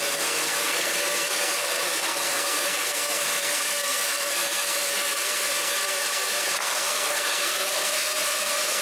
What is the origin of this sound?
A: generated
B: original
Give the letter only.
A